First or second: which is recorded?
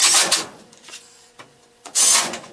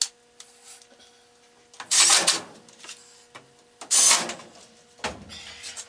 second